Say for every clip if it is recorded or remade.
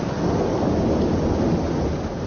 recorded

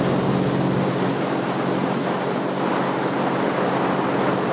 recorded